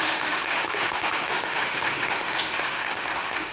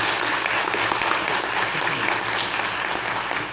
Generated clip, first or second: first